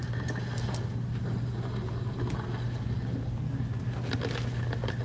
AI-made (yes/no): no